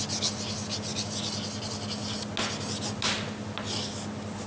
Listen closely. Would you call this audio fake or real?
real